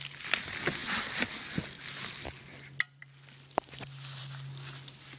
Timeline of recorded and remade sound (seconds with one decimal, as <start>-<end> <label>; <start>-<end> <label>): 0.0-5.2 recorded